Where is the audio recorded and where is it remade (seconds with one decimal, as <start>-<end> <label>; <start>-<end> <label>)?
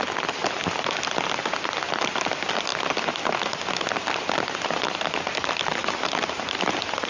0.0-0.4 recorded; 0.4-1.0 remade; 1.0-5.8 recorded; 5.8-7.1 remade